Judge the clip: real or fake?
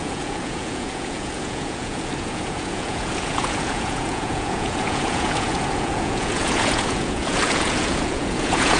fake